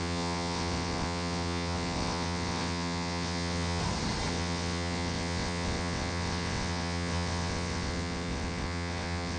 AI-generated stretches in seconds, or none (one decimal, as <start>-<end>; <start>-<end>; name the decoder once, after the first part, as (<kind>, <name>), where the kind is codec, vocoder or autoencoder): 0.0-3.8 (vocoder, WaveNeXt); 4.3-9.4